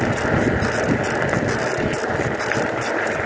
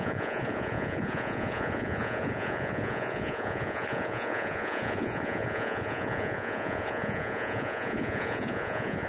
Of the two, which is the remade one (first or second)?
second